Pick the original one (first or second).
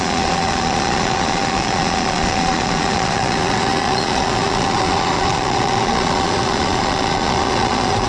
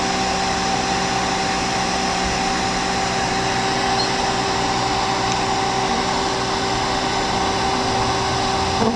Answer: second